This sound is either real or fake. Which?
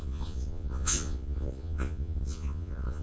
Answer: fake